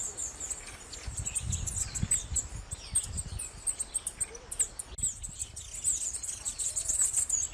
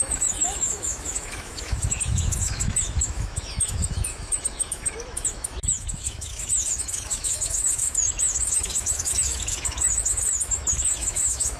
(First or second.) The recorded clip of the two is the first